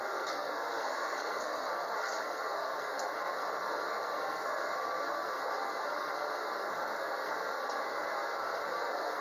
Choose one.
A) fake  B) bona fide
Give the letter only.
A